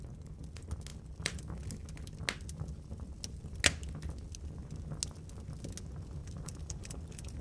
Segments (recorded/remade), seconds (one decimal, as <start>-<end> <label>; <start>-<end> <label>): 0.0-0.9 recorded; 0.9-1.5 remade; 1.5-6.2 recorded; 6.2-7.4 remade